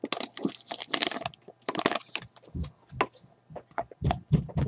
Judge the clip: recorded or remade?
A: recorded